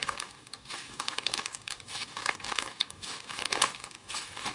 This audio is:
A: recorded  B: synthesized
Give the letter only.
B